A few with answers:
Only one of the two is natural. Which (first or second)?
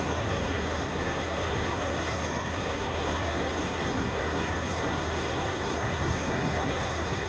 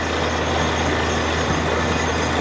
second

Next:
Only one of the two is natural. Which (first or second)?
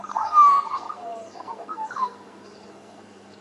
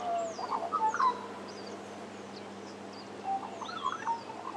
second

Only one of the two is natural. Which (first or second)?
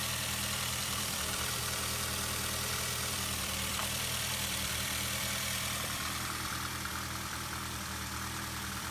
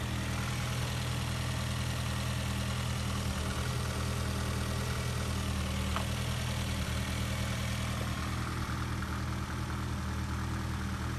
second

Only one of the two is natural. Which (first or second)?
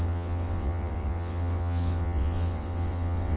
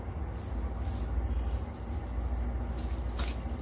second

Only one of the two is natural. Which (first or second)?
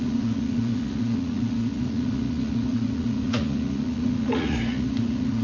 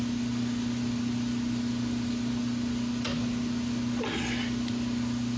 second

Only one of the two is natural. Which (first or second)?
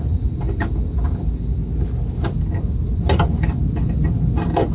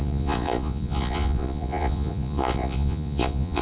first